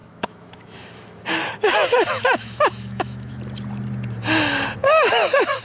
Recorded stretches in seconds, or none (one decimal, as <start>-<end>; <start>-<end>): 3.4-4.8